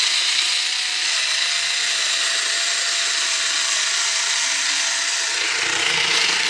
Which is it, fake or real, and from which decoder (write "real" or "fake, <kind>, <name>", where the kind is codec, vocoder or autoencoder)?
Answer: real